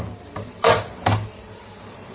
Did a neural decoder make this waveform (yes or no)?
yes